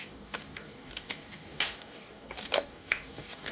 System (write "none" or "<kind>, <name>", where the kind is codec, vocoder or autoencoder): codec, DAC